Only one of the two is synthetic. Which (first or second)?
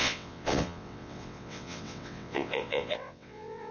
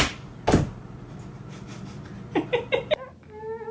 first